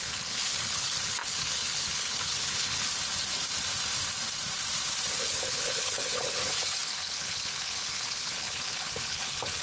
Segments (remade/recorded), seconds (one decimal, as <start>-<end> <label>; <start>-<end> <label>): 0.0-2.9 remade; 2.9-5.2 recorded; 5.2-9.6 remade